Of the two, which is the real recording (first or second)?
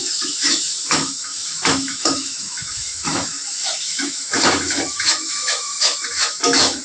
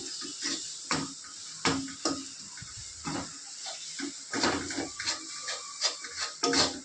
second